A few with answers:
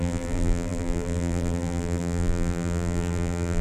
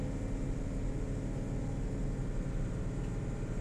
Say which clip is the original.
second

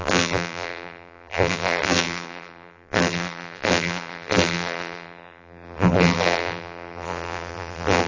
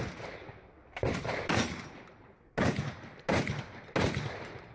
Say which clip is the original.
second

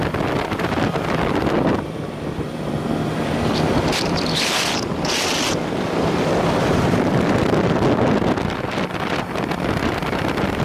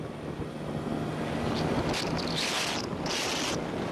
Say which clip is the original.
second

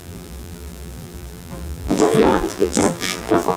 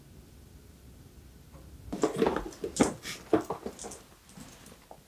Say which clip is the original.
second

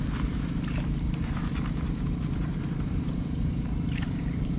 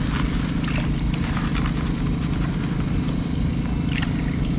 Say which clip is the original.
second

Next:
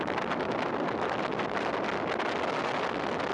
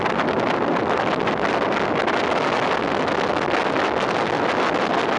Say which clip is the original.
second